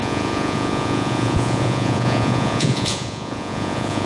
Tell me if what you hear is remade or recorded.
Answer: remade